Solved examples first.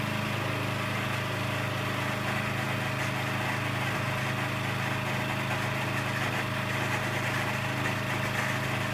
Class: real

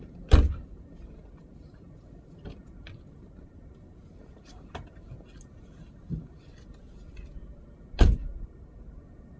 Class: real